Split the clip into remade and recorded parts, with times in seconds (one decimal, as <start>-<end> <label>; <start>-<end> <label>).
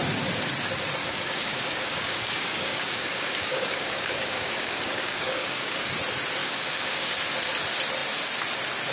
0.0-1.0 recorded; 1.0-5.9 remade; 5.9-6.4 recorded; 6.4-7.1 remade; 7.1-8.9 recorded